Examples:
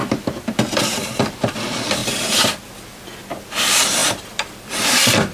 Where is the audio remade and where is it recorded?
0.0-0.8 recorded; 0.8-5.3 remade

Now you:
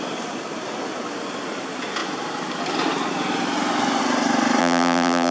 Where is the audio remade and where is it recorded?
0.0-4.6 recorded; 4.6-5.3 remade